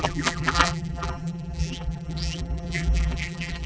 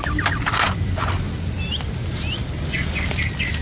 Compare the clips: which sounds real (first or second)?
second